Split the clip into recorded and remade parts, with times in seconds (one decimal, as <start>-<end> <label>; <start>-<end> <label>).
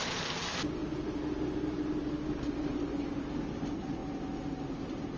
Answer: 0.0-5.2 recorded